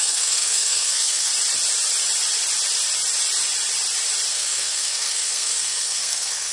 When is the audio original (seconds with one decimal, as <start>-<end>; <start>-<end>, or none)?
1.3-4.3